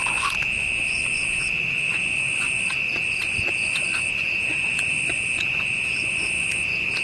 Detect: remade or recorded remade